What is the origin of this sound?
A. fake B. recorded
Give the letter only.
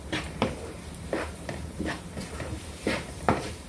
A